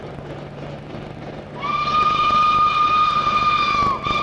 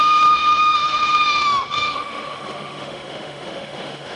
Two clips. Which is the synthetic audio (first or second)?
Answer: second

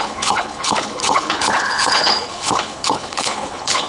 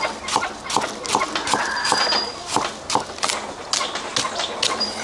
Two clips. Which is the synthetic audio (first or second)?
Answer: first